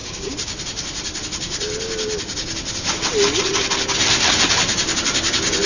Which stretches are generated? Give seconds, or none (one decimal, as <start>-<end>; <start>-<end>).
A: none